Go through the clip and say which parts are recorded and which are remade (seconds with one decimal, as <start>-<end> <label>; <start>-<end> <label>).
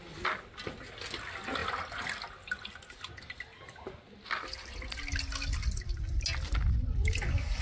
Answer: 0.0-7.6 recorded